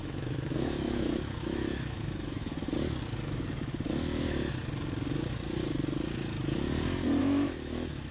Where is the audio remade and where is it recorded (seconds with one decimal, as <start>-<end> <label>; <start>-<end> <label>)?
0.0-2.6 remade; 2.6-7.2 recorded; 7.2-8.1 remade